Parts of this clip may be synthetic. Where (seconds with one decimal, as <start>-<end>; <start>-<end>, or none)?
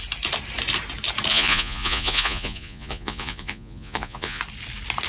1.3-4.4